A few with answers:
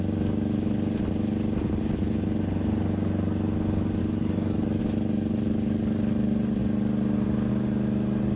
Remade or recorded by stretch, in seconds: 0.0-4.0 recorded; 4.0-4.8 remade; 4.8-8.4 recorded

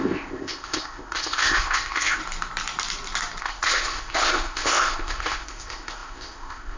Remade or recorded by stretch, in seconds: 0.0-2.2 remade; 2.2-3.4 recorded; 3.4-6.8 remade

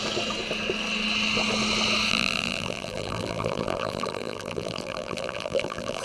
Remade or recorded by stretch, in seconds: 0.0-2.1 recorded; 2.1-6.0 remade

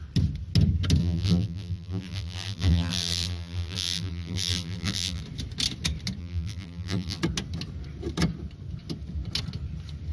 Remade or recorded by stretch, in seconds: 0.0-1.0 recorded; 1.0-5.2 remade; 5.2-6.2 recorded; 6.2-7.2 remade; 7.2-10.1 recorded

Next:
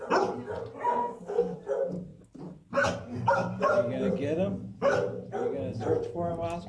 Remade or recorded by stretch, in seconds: 0.0-1.0 recorded; 1.0-1.6 remade; 1.6-6.7 recorded

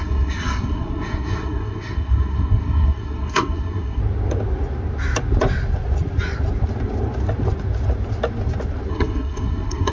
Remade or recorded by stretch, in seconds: 0.0-4.0 remade; 4.0-8.9 recorded; 8.9-9.9 remade

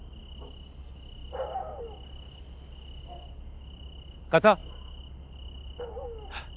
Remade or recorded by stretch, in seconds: 0.0-6.6 recorded

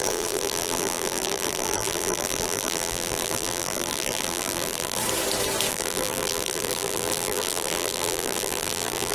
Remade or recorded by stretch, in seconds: 0.0-5.0 remade; 5.0-5.7 recorded; 5.7-9.1 remade